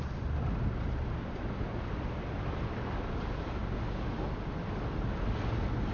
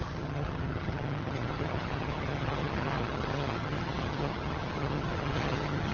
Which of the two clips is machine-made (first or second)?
second